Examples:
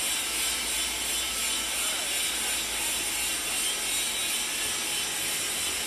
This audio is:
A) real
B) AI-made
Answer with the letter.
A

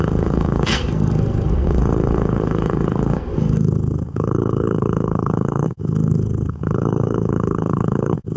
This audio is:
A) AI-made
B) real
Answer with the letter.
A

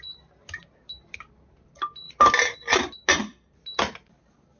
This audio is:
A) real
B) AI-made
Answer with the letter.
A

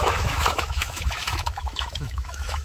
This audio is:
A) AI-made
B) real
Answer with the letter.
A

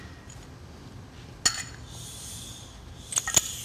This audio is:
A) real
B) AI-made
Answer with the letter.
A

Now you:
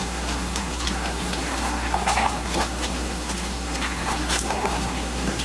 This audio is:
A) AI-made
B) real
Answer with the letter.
A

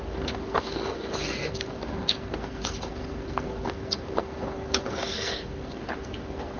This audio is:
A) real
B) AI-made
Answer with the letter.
B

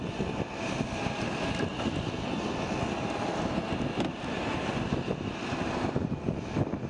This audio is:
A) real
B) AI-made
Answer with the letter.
A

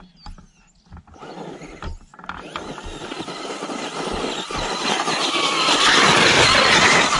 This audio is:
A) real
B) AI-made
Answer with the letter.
A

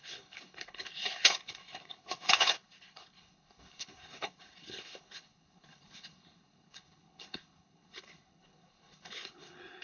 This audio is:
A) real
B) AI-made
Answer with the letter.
B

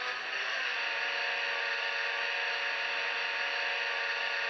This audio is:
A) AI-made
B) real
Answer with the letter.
B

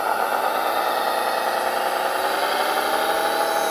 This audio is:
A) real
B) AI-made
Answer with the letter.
A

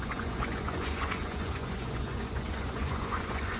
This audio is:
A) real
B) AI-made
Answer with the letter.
B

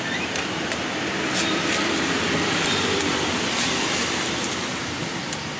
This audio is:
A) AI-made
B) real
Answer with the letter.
A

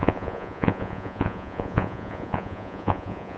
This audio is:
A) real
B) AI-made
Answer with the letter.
B